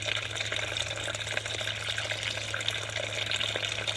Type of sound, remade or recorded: recorded